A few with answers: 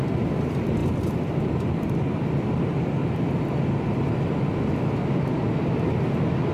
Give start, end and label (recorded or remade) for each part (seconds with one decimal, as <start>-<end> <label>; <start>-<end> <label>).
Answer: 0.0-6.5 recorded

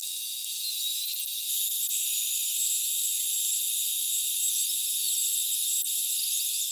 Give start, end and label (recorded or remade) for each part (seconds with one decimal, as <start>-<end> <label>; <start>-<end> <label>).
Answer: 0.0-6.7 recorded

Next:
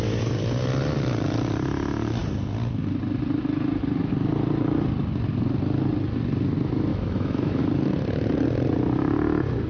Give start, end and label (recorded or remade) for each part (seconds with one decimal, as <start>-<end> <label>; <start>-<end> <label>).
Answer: 0.0-6.9 recorded; 6.9-7.6 remade; 7.6-9.7 recorded